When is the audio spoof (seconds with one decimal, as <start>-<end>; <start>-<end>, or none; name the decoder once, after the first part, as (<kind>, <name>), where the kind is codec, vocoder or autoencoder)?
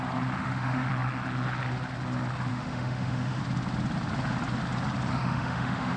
0.4-0.9 (autoencoder, DAC-VAE); 2.5-3.4; 5.1-6.0